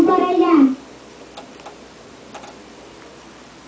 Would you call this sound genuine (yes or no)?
yes